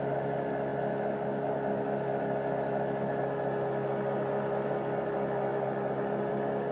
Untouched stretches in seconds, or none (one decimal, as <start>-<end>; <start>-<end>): 0.0-6.7